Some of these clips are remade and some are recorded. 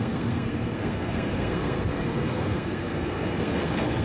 remade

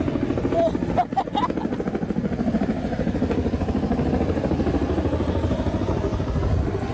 recorded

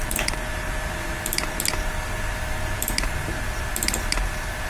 recorded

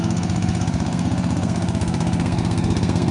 remade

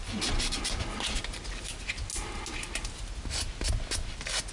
recorded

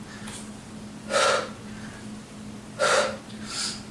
recorded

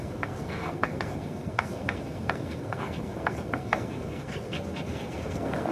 remade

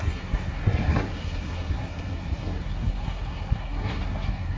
remade